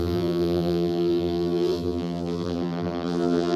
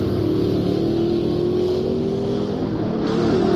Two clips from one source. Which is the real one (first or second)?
second